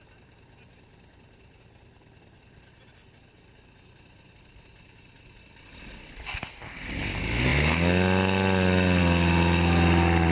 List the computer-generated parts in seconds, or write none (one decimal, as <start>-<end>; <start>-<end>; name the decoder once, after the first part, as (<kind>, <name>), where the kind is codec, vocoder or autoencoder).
none